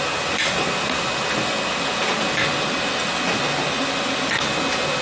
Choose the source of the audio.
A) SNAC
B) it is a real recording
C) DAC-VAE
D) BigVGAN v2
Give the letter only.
B